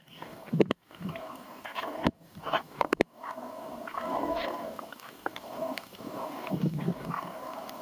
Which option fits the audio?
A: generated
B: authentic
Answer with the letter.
A